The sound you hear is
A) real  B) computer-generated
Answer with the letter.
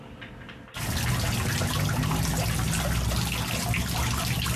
A